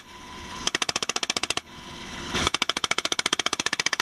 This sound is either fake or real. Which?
fake